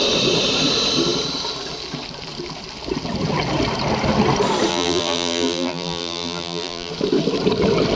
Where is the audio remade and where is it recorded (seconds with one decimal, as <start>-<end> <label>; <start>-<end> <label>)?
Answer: 0.0-4.7 recorded; 4.7-6.9 remade; 6.9-8.0 recorded